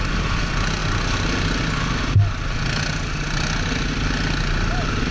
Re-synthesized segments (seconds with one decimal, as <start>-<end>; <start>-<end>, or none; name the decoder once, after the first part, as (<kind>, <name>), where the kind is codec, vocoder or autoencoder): none